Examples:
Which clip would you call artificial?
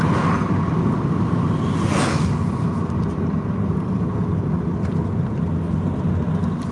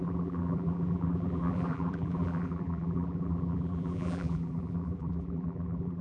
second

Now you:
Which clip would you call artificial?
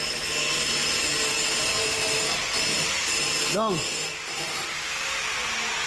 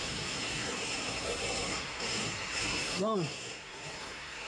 second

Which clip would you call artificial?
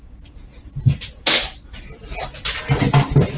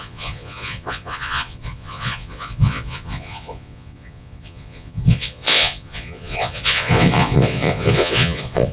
second